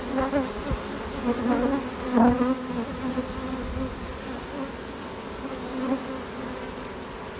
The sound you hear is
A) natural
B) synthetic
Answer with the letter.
A